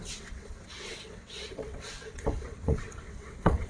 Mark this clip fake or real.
fake